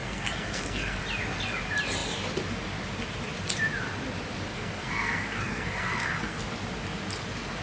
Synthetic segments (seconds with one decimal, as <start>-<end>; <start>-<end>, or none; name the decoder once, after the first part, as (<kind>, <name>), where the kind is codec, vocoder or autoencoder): 0.0-1.0 (codec, SNAC); 4.5-6.4